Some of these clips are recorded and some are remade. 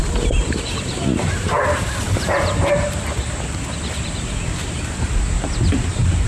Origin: recorded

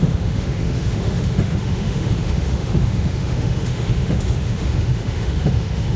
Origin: remade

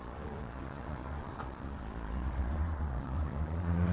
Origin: remade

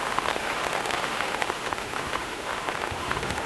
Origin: remade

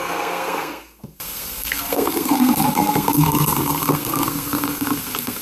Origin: remade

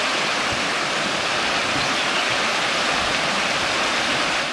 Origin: recorded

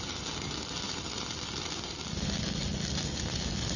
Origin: recorded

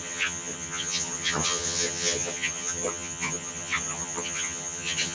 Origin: remade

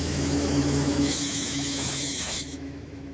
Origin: remade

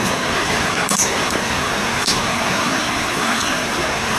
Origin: remade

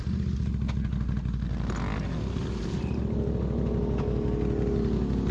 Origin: recorded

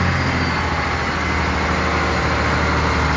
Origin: recorded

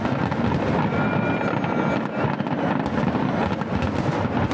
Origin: recorded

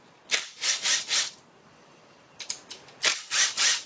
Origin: remade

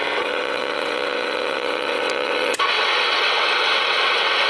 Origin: remade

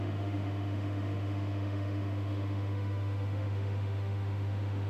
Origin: remade